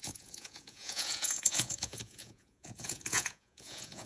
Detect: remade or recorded remade